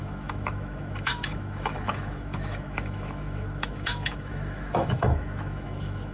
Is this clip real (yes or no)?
no